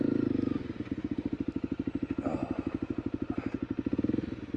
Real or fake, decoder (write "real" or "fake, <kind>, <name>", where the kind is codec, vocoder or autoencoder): real